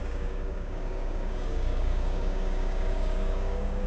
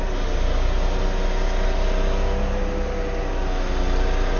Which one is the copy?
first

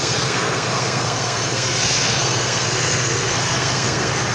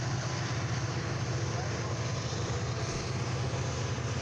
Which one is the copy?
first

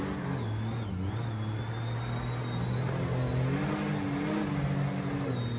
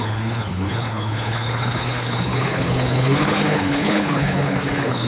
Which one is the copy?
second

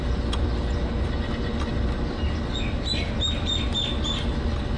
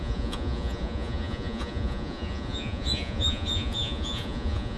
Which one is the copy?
second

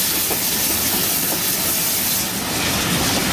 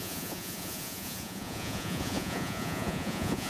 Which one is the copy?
second